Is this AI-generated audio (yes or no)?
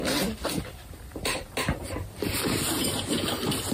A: yes